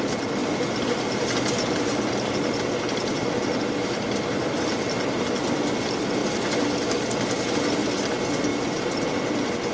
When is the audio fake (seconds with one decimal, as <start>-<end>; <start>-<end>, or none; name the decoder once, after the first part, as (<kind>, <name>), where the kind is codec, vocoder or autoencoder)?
none